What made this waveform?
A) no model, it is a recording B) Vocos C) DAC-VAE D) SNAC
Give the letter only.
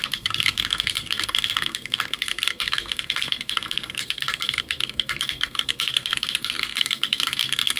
D